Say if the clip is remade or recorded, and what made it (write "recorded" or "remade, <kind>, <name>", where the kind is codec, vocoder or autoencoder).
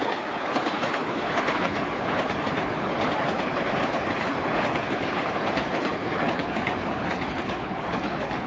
remade, codec, HILCodec